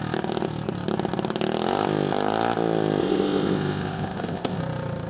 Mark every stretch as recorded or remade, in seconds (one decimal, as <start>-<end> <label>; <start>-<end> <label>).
0.0-3.0 recorded; 3.0-4.6 remade; 4.6-5.1 recorded